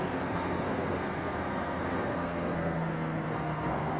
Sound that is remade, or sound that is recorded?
remade